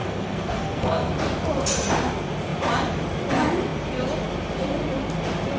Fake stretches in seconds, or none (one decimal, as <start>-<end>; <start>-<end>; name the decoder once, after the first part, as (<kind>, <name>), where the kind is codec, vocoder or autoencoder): 0.0-1.1 (codec, SNAC)